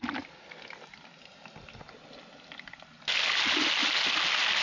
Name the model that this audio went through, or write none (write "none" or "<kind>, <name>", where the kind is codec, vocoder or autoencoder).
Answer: none